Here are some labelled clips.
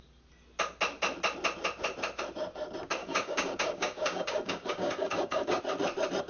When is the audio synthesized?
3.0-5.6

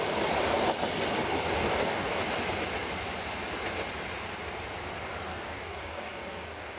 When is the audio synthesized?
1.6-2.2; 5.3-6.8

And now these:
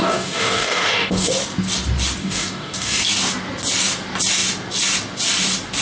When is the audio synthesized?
0.0-1.3; 2.2-3.0

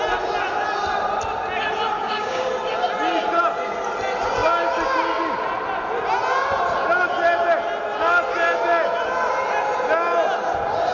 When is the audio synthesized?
2.0-2.5

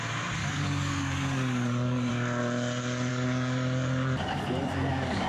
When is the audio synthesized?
0.4-2.1; 3.1-5.3